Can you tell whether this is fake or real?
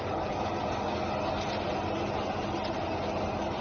real